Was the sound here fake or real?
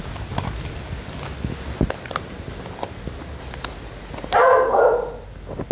real